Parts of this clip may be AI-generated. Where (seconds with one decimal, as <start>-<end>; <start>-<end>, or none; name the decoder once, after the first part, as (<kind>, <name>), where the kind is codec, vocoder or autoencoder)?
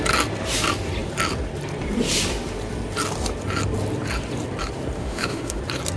5.0-5.6 (autoencoder, DAC-VAE)